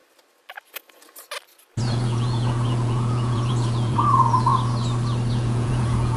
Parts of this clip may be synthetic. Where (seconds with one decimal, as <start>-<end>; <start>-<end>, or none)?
1.8-4.5; 5.3-6.2

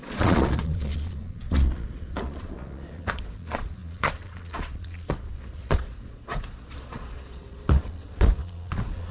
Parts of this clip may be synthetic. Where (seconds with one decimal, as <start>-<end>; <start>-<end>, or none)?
0.0-9.1

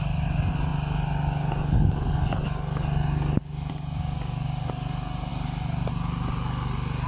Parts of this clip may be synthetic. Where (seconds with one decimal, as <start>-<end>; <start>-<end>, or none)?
none

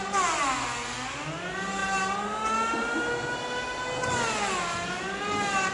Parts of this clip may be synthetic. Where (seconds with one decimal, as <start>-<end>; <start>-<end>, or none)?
none

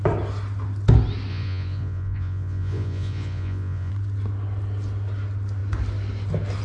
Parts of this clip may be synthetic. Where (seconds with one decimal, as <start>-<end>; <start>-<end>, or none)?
1.3-3.9

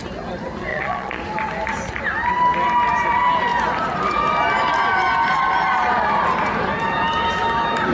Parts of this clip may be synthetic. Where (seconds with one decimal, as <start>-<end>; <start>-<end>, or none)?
0.7-1.2

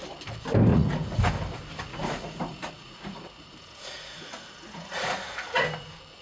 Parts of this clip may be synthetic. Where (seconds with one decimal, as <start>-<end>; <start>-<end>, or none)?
0.7-1.2; 1.9-5.6